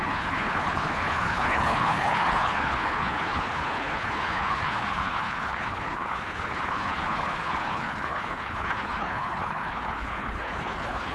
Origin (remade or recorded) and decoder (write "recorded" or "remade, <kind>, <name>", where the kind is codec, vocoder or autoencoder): remade, codec, HILCodec